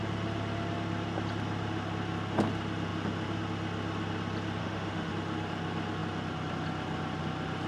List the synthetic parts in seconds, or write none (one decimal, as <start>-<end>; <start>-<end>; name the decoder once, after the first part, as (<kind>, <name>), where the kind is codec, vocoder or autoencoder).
4.6-5.1 (autoencoder, DAC-VAE)